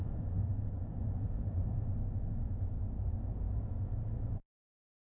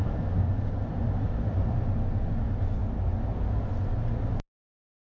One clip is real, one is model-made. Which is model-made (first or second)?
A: first